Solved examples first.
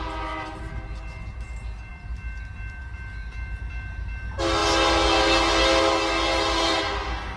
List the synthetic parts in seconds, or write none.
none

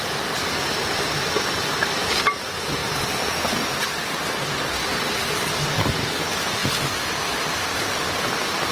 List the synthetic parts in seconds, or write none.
2.8-3.6 (vocoder, BigVGAN v2)

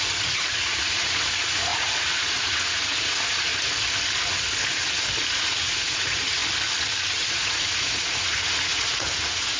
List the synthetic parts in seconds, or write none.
0.0-3.5 (vocoder, Vocos); 5.3-6.4; 7.1-9.6